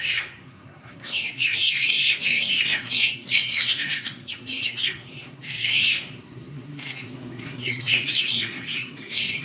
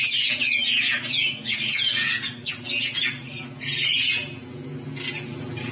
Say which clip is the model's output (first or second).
first